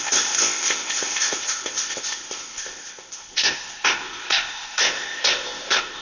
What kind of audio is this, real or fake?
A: fake